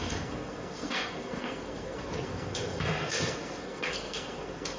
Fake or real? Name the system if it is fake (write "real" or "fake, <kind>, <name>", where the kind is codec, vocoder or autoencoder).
fake, codec, SNAC